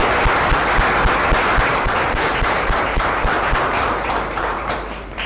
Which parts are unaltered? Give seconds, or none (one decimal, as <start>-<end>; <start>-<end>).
0.0-1.7